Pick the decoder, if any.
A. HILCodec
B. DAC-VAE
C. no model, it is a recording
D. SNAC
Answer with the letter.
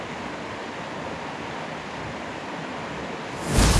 C